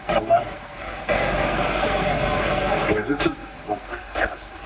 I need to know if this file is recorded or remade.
remade